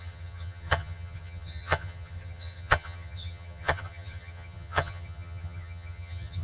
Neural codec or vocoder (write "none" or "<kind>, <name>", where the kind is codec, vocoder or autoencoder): vocoder, HiFi-GAN